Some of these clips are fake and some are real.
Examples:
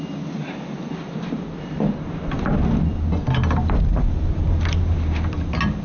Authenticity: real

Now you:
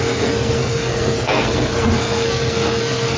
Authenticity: fake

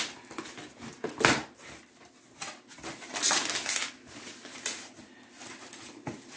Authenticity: real